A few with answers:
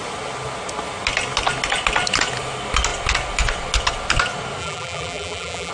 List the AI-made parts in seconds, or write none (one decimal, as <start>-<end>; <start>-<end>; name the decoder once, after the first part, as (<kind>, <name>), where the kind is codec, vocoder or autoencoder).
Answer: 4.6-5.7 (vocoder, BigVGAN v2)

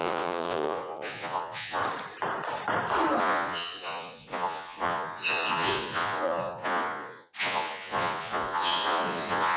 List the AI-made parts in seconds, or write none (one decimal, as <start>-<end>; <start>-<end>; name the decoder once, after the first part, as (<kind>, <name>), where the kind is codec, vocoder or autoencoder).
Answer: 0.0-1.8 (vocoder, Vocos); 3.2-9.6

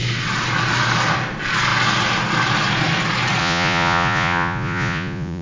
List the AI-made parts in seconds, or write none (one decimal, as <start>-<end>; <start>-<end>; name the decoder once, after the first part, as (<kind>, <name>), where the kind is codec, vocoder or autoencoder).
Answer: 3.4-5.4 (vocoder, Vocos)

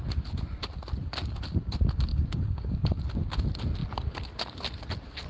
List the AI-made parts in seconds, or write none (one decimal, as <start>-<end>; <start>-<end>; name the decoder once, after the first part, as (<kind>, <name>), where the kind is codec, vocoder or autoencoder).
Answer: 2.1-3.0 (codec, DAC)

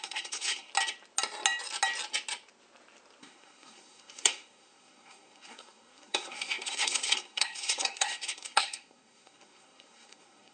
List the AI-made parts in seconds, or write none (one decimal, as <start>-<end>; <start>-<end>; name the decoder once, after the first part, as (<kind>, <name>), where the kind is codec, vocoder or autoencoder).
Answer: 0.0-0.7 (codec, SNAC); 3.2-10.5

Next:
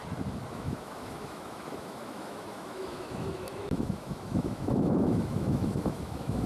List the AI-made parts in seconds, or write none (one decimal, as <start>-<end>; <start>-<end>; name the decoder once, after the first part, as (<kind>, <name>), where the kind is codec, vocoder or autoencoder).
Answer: 0.5-6.5 (autoencoder, DAC-VAE)

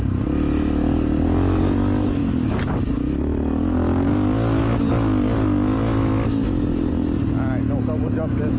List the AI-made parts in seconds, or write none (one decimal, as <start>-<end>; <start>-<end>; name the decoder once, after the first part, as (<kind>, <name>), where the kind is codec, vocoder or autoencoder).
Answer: none

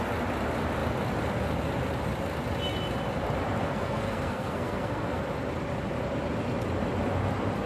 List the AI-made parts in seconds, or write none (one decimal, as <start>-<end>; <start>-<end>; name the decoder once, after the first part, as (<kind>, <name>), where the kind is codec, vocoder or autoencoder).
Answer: 3.6-5.2 (codec, SNAC)